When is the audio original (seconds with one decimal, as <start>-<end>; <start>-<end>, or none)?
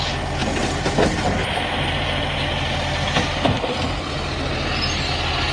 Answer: 0.0-5.5